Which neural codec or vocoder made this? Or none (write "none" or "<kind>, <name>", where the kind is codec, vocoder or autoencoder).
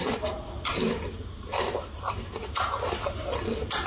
none